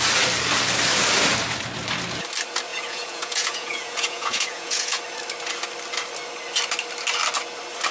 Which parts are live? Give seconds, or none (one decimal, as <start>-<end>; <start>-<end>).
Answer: 0.0-2.7; 5.0-7.9